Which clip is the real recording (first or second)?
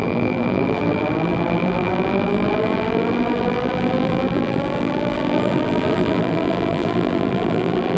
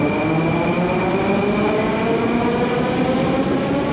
second